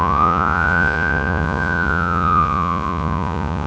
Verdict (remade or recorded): remade